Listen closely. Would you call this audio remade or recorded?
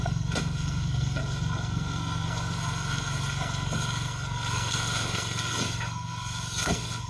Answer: remade